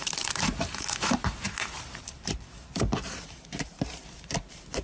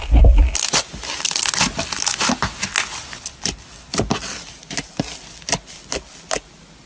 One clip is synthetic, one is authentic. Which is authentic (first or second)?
second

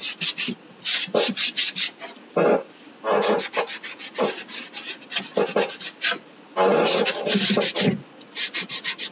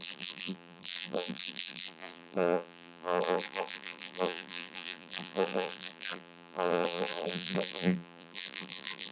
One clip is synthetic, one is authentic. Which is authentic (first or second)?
first